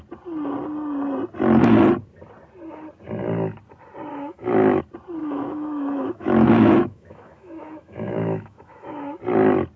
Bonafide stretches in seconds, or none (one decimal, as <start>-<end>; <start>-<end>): 0.0-4.1; 4.8-5.2; 9.2-9.8